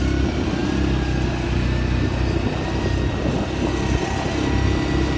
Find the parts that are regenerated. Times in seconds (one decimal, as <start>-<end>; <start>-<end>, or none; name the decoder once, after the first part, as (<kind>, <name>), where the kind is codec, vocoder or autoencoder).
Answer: none